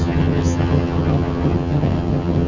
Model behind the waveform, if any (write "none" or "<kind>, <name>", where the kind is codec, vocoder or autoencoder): vocoder, HiFi-GAN